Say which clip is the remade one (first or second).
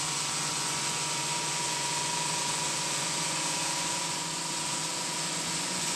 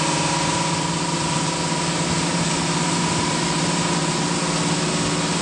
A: first